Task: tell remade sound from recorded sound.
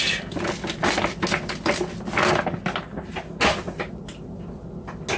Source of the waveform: recorded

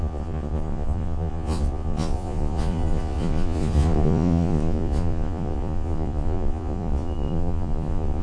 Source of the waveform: remade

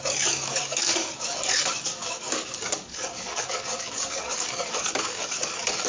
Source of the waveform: remade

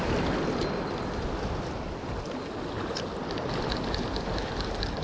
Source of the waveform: recorded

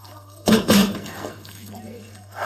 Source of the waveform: remade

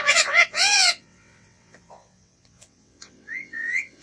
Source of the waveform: remade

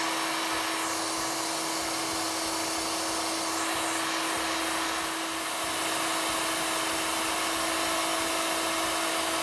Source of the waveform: recorded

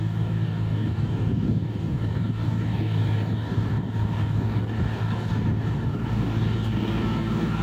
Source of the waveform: remade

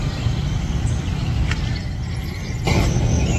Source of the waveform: recorded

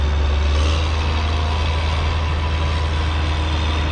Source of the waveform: recorded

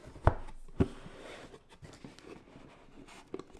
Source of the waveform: recorded